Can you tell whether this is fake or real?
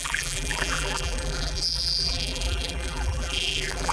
fake